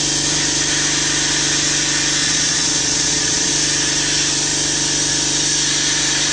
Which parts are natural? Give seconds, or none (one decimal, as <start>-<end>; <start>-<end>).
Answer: 0.0-2.2; 3.5-6.3